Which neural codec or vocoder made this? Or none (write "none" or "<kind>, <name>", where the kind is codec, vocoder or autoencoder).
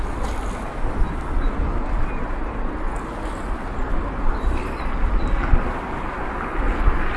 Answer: vocoder, BigVGAN v2